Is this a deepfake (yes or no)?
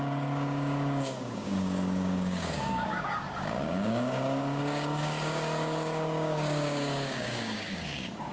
yes